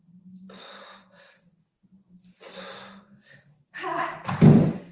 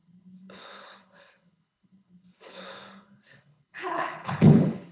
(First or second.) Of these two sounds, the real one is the first